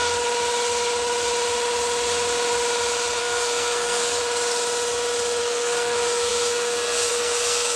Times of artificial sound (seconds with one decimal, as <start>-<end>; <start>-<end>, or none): 3.2-4.2; 5.4-7.8

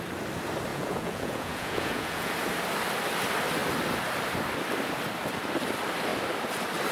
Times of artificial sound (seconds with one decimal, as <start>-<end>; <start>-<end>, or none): 0.7-2.3

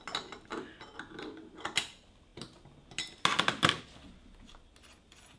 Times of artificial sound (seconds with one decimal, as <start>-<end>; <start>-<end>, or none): none

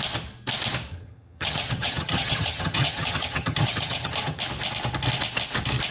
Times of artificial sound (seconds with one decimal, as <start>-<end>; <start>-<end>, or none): 0.9-4.4

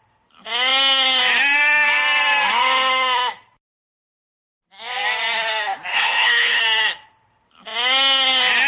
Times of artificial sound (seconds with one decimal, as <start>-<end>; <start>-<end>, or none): 5.9-6.6

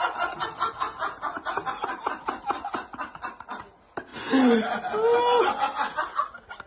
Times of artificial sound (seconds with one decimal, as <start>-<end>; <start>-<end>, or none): 3.1-3.6